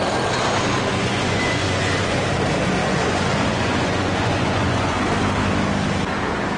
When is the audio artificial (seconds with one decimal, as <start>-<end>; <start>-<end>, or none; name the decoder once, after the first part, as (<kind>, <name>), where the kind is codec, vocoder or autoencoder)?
0.9-2.2 (vocoder, Vocos); 2.8-5.0